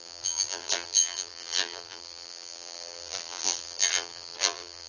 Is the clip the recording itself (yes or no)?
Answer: no